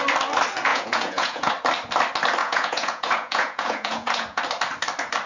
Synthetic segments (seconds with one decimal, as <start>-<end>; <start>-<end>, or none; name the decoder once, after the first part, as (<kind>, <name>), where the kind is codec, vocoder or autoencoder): 0.7-1.5 (vocoder, Vocos); 2.4-4.4